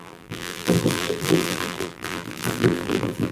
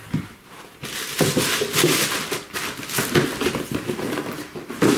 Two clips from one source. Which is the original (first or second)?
second